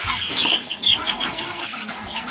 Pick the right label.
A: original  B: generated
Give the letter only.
B